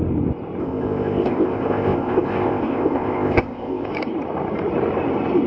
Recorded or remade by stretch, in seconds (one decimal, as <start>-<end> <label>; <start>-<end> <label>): 0.0-0.6 recorded; 0.6-3.9 remade; 3.9-5.5 recorded